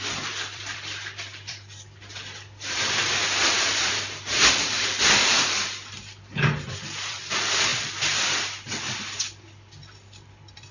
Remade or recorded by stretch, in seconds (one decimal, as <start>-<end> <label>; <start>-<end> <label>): 0.0-10.7 remade